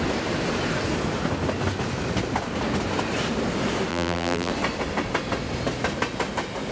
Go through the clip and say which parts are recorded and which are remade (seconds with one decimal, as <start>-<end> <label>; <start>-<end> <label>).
0.0-3.9 recorded; 3.9-4.5 remade; 4.5-6.7 recorded

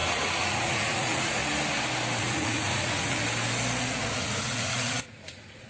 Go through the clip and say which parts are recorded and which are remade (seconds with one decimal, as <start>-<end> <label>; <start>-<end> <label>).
0.0-1.4 remade; 1.4-2.2 recorded; 2.2-3.2 remade; 3.2-3.8 recorded; 3.8-5.7 remade

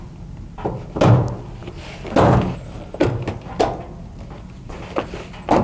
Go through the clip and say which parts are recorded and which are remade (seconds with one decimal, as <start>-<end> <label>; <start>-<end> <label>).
0.0-5.6 recorded

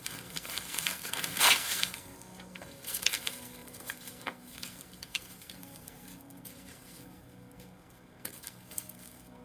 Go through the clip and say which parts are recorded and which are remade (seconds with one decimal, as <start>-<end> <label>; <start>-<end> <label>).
0.0-9.4 remade

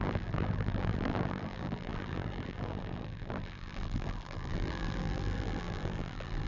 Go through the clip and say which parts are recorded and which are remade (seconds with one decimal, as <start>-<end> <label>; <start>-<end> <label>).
0.0-6.5 remade

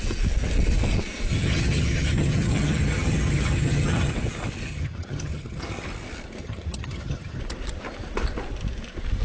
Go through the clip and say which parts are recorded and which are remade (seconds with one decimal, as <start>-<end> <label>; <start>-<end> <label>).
0.0-1.3 recorded; 1.3-4.1 remade; 4.1-4.7 recorded; 4.7-5.6 remade; 5.6-6.4 recorded; 6.4-7.4 remade; 7.4-9.2 recorded

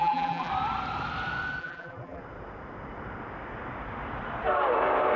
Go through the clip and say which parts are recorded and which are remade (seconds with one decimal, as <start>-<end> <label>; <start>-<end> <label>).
0.0-0.5 remade; 0.5-1.6 recorded; 1.6-2.2 remade; 2.2-5.2 recorded